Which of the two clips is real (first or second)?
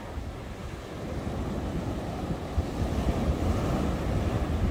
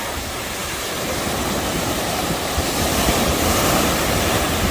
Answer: first